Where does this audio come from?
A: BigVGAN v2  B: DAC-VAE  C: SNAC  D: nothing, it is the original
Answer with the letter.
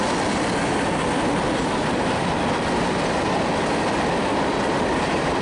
D